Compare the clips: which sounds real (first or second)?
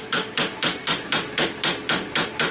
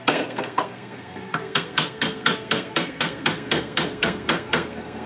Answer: first